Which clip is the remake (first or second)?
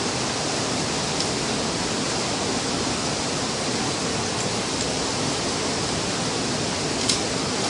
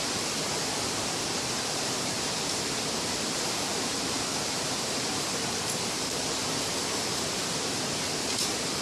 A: second